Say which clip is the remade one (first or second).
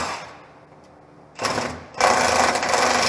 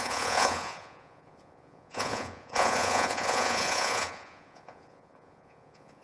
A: second